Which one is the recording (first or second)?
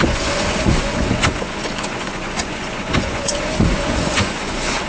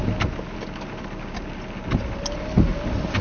second